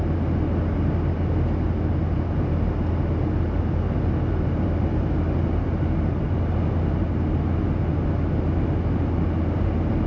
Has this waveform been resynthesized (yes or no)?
no